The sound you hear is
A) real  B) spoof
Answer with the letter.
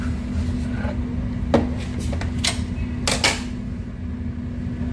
A